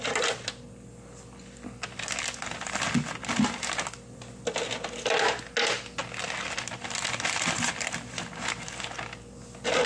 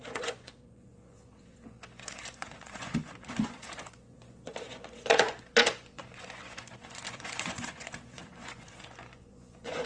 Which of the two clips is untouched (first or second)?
first